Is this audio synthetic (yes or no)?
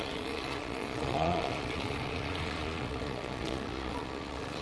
yes